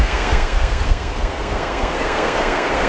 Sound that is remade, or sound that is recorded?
remade